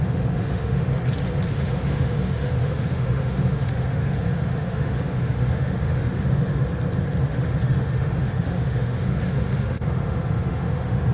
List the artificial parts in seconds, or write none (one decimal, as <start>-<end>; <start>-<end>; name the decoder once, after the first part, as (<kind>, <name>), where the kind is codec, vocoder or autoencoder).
0.0-0.9 (autoencoder, DAC-VAE); 1.5-6.6; 7.3-11.1